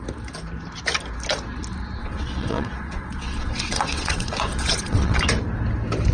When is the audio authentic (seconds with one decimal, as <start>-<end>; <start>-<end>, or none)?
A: 0.0-2.0; 5.2-6.1